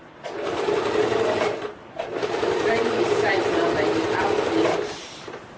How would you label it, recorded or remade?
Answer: remade